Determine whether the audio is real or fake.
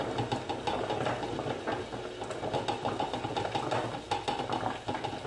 real